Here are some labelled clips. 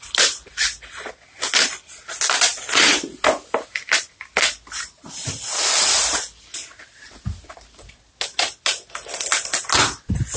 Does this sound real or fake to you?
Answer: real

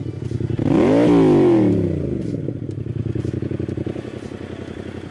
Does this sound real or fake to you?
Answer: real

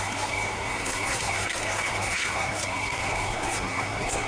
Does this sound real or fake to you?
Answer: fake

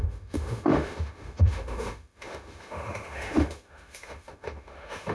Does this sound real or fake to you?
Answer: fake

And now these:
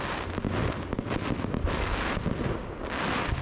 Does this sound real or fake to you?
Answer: real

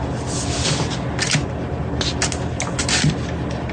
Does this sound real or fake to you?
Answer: real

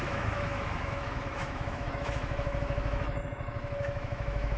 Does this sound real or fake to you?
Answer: fake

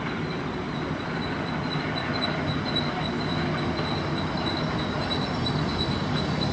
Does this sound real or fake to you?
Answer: real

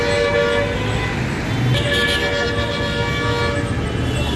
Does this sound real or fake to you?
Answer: real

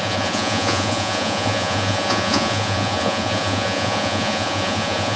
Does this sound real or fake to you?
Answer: fake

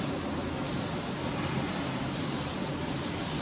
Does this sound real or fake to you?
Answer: real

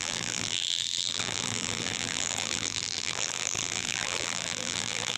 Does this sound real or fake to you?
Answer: fake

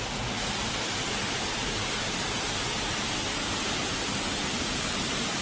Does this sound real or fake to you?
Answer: real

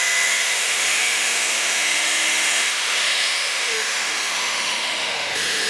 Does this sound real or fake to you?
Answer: fake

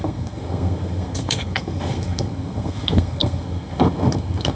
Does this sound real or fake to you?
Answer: fake